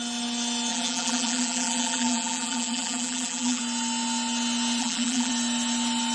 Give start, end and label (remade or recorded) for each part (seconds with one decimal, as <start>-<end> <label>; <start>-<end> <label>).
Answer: 0.0-0.7 recorded; 0.7-3.6 remade; 3.6-4.8 recorded; 4.8-5.3 remade; 5.3-6.1 recorded